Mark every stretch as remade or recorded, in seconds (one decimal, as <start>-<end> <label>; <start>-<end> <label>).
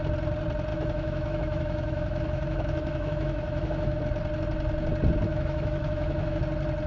0.0-0.7 recorded; 0.7-4.0 remade; 4.0-5.3 recorded; 5.3-6.4 remade; 6.4-6.9 recorded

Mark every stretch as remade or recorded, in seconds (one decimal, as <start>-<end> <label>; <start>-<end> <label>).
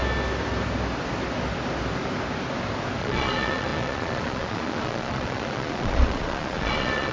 0.0-3.0 recorded; 3.0-7.1 remade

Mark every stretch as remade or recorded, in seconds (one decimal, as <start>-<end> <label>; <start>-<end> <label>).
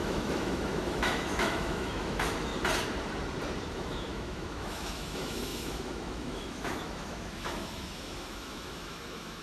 0.0-2.5 remade; 2.5-3.7 recorded; 3.7-9.4 remade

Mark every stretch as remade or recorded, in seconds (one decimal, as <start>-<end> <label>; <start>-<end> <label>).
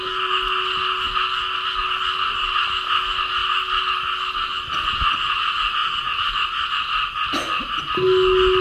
0.0-8.6 recorded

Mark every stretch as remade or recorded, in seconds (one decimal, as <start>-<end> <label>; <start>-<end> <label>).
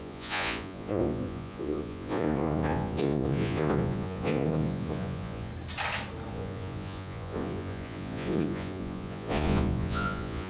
0.0-5.5 remade; 5.5-6.3 recorded; 6.3-10.5 remade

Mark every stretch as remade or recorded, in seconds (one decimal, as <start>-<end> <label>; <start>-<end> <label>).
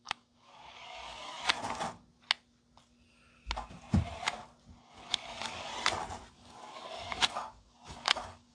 0.0-1.4 remade; 1.4-4.8 recorded; 4.8-5.7 remade; 5.7-6.3 recorded; 6.3-8.5 remade